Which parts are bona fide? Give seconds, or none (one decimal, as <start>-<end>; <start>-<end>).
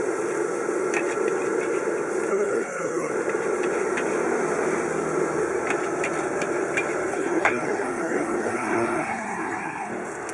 0.0-2.3; 3.1-7.1; 9.9-10.3